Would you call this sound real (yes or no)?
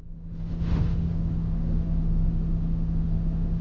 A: no